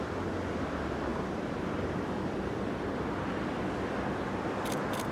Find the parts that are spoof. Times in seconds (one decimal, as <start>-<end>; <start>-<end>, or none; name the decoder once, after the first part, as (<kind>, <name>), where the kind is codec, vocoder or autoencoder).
1.1-2.9 (vocoder, BigVGAN v2)

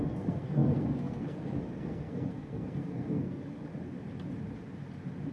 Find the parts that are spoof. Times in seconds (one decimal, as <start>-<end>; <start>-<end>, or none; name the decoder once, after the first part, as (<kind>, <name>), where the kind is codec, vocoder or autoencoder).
0.0-3.7 (codec, SNAC)

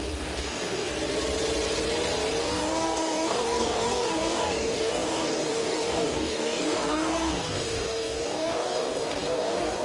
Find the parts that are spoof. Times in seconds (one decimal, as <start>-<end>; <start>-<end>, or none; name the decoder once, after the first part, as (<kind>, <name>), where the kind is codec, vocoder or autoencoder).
0.0-0.9 (codec, DAC); 2.4-9.8

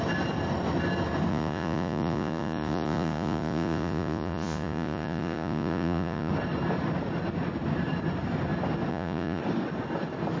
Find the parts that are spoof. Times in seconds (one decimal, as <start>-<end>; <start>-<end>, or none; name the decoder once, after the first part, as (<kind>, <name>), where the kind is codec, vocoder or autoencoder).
1.3-6.3 (vocoder, Vocos); 8.9-9.4